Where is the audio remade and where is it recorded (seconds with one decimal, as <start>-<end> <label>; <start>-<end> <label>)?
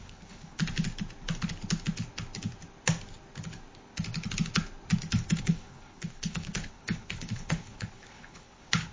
0.0-0.6 remade; 0.6-5.4 recorded; 5.4-8.9 remade